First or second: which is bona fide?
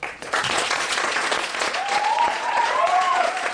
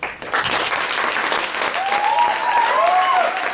second